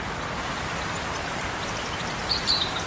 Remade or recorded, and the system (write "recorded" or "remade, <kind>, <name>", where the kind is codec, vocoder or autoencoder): recorded